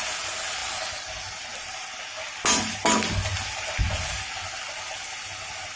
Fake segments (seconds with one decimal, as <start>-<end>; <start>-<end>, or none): none

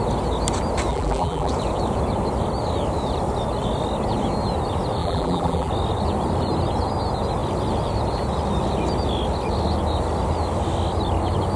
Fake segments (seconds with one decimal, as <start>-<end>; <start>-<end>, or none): 0.9-1.5; 5.0-5.7

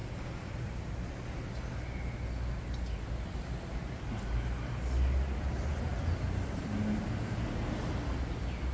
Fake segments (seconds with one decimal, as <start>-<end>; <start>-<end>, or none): 5.9-7.0

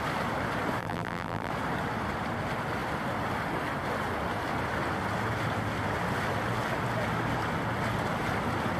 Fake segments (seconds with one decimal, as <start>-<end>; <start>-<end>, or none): 0.8-1.5

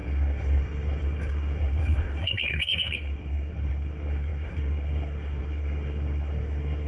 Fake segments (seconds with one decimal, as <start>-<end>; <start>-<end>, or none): 0.0-6.9

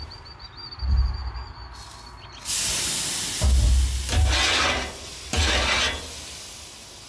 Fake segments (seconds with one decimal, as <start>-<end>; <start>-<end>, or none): none

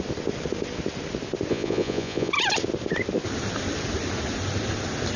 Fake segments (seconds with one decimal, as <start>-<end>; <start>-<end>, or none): 1.5-2.3

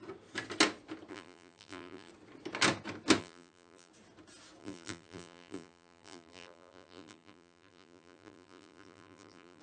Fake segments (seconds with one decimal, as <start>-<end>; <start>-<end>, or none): 1.1-2.1; 3.2-3.9; 4.6-9.6